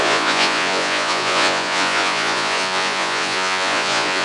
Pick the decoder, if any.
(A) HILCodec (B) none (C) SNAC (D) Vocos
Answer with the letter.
D